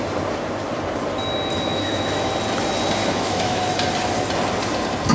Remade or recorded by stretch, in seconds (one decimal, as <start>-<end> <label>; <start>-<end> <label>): 0.0-1.5 recorded; 1.5-2.3 remade; 2.3-3.0 recorded; 3.0-3.6 remade; 3.6-5.1 recorded